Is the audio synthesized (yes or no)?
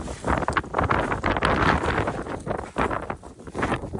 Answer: no